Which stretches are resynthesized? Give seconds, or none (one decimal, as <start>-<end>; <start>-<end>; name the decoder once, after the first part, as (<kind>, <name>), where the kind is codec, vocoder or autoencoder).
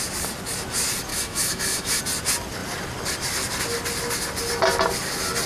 1.1-2.0 (autoencoder, DAC-VAE)